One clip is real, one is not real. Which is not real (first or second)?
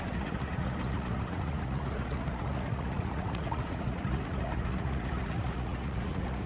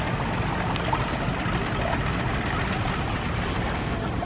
first